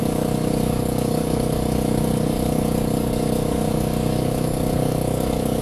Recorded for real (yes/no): no